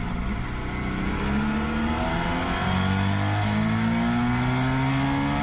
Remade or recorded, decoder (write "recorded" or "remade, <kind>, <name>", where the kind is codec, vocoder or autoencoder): recorded